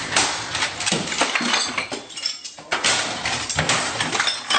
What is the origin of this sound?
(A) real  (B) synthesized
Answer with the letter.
A